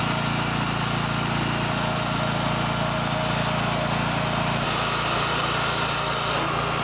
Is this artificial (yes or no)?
no